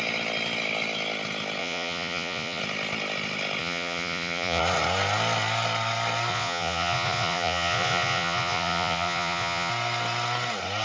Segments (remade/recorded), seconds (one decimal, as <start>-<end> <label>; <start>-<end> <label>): 0.0-1.6 recorded; 1.6-2.6 remade; 2.6-3.6 recorded; 3.6-4.6 remade; 4.6-6.3 recorded; 6.3-9.7 remade; 9.7-10.8 recorded